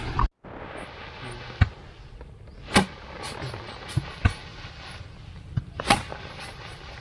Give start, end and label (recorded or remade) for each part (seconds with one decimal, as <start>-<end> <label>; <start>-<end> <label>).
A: 0.0-4.5 recorded; 4.5-7.0 remade